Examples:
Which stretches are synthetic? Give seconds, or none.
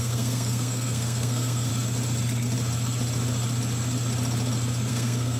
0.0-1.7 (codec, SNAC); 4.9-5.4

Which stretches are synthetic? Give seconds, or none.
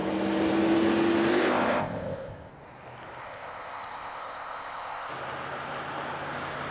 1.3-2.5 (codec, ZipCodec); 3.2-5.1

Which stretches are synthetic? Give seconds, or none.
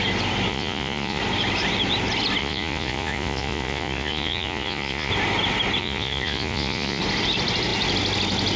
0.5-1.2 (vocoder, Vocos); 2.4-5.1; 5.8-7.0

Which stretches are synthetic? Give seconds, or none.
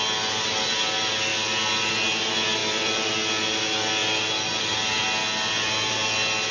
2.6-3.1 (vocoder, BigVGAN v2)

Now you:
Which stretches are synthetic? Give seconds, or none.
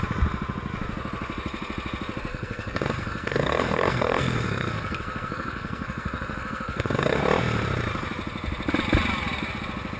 2.3-7.2 (codec, SNAC)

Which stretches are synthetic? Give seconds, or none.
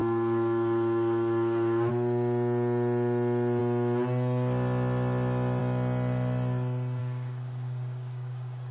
0.0-1.9 (codec, DAC); 7.0-8.7